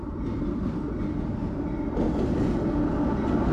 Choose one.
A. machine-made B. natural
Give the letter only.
B